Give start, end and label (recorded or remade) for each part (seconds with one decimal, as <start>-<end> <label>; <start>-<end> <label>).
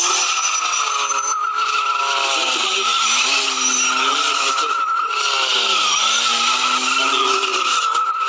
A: 0.0-7.5 recorded; 7.5-8.3 remade